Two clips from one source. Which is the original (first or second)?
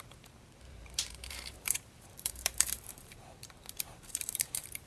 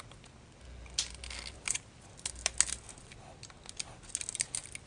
second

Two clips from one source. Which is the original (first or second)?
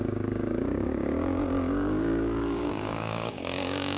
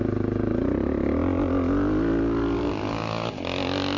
second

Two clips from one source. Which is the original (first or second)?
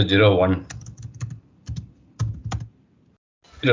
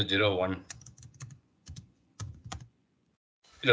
first